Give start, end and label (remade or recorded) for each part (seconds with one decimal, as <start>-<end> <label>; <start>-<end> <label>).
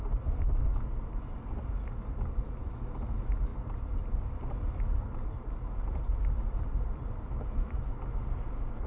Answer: 0.0-1.1 recorded; 1.1-1.9 remade; 1.9-3.5 recorded; 3.5-7.9 remade; 7.9-8.9 recorded